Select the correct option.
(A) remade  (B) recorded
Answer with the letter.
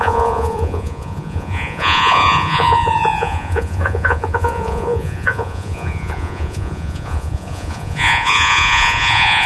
A